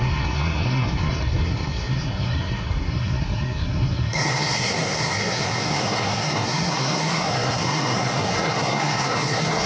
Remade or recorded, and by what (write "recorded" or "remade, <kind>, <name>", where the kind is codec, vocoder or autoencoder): remade, codec, SNAC